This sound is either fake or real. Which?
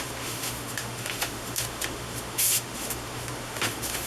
fake